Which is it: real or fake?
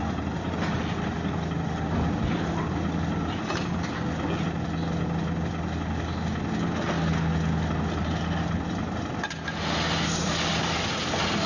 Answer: real